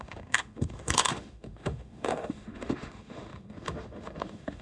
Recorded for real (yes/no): no